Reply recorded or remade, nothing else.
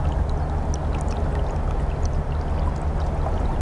recorded